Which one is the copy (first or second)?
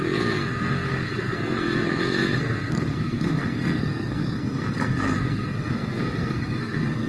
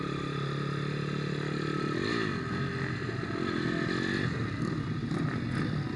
first